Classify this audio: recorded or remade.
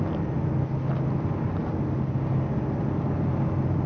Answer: recorded